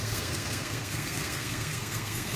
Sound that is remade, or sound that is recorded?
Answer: remade